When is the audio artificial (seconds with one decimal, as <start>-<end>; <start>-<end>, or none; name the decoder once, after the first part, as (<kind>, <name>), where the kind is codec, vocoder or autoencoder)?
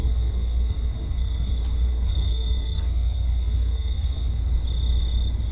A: 0.0-1.5 (codec, SNAC); 1.9-4.4